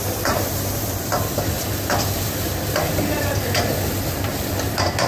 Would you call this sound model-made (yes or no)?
yes